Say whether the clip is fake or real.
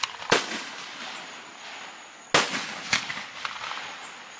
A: real